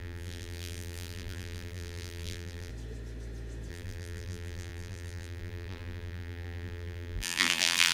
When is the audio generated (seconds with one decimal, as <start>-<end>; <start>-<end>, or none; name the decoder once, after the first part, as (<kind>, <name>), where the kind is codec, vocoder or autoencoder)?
0.0-2.7 (vocoder, BigVGAN v2); 3.7-7.9